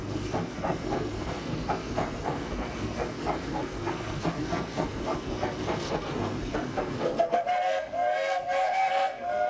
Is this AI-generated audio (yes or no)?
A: yes